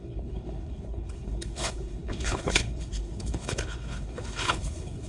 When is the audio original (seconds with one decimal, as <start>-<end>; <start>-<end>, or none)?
none